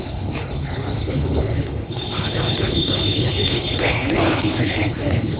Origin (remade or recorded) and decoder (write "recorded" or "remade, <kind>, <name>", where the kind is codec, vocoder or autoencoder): remade, codec, HILCodec